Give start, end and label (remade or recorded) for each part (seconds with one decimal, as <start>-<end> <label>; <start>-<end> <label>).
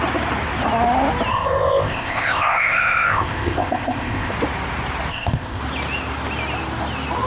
0.0-1.3 recorded; 1.3-4.3 remade; 4.3-5.1 recorded; 5.1-5.6 remade; 5.6-7.3 recorded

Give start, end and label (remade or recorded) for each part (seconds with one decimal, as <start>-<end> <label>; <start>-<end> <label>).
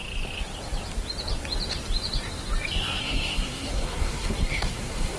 0.0-3.0 recorded; 3.0-5.2 remade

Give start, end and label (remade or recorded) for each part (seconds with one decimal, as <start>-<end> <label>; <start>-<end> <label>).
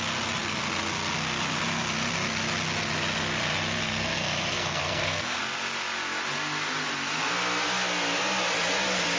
0.0-3.8 recorded; 3.8-5.4 remade; 5.4-9.2 recorded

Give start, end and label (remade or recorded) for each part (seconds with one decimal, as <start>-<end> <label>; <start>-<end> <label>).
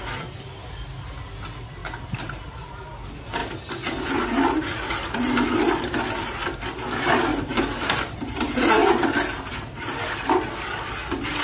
0.0-1.8 recorded; 1.8-2.7 remade; 2.7-7.3 recorded; 7.3-8.7 remade; 8.7-11.4 recorded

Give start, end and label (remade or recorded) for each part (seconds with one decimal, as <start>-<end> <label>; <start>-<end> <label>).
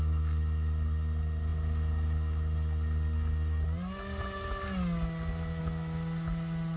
0.0-6.8 recorded